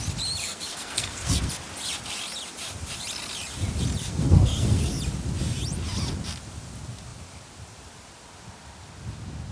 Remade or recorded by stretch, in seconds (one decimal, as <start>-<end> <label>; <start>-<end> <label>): 0.0-0.4 recorded; 0.4-1.5 remade; 1.5-4.0 recorded; 4.0-5.0 remade; 5.0-9.5 recorded